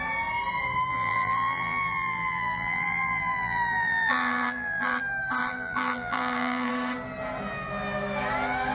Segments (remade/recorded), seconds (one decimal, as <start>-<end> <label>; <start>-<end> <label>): 0.0-0.9 recorded; 0.9-5.0 remade; 5.0-5.4 recorded; 5.4-6.7 remade; 6.7-8.7 recorded